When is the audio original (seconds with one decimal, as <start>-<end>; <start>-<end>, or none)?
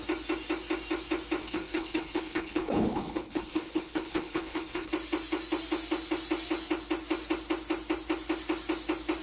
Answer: 0.0-1.4; 4.9-9.2